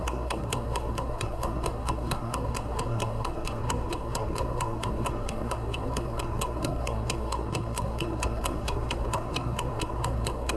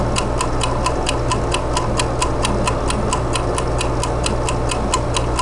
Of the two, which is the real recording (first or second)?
second